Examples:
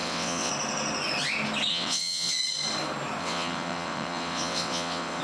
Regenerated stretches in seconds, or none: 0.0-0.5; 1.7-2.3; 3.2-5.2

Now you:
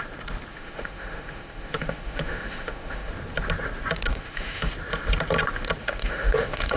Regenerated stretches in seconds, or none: 0.5-3.1; 4.1-4.7; 5.8-6.8